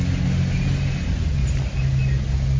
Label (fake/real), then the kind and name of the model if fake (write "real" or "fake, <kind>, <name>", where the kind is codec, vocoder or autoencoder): real